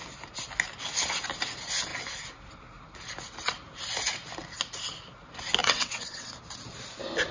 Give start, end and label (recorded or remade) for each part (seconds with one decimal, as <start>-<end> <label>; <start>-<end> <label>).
0.0-5.6 recorded; 5.6-6.3 remade; 6.3-7.3 recorded